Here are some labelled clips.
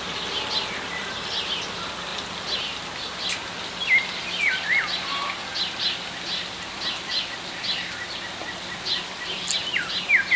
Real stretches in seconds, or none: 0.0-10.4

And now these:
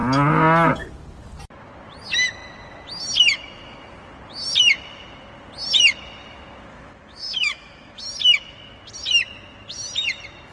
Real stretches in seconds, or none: 0.0-6.7; 8.0-10.5

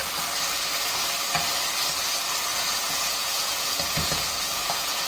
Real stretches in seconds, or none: 0.0-2.5

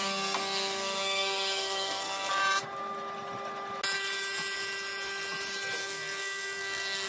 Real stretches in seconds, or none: 2.3-5.8

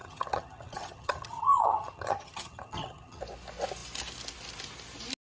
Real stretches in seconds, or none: 3.2-5.3

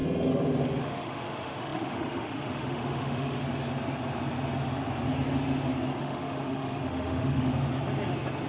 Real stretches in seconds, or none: 0.0-0.8; 3.4-6.0; 7.5-8.5

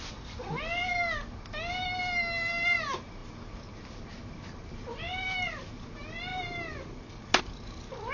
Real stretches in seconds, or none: 0.0-8.1